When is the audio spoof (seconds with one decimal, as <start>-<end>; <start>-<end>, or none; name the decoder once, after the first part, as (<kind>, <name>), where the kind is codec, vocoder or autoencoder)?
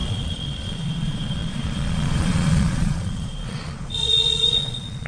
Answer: 0.0-5.1 (vocoder, Vocos)